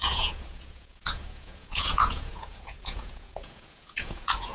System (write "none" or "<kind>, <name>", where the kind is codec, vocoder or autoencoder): vocoder, Vocos